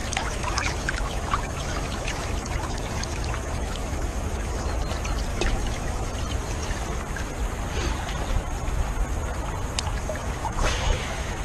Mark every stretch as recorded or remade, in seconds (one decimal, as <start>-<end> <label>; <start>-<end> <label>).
0.0-4.8 remade; 4.8-5.3 recorded; 5.3-6.1 remade; 6.1-10.2 recorded; 10.2-11.4 remade